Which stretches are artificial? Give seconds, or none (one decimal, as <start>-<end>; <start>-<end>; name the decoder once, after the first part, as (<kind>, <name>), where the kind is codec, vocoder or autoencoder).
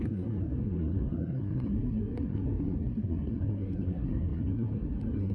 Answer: 0.0-5.3 (codec, SNAC)